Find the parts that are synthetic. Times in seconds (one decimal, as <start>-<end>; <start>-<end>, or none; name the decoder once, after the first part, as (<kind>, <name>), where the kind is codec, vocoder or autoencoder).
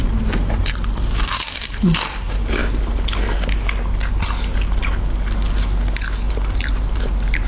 0.0-2.6 (vocoder, BigVGAN v2); 6.3-7.5